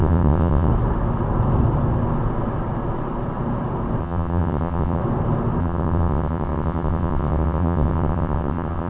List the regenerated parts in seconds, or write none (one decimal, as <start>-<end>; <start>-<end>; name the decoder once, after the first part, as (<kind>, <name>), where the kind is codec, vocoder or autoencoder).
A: 0.0-0.7 (vocoder, WaveNeXt); 4.0-5.0; 5.6-8.9